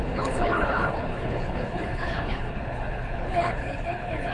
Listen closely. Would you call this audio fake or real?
fake